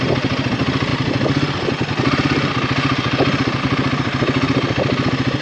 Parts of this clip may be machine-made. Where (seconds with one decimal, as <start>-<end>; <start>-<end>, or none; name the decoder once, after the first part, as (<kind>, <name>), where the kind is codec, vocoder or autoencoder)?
none